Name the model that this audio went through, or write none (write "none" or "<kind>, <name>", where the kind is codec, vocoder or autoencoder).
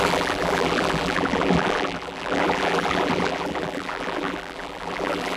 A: vocoder, BigVGAN v2